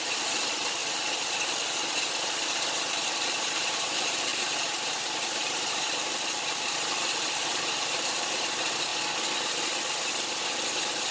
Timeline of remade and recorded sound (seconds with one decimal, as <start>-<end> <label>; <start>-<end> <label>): 0.0-0.8 remade; 0.8-2.9 recorded; 2.9-8.9 remade; 8.9-10.0 recorded; 10.0-11.1 remade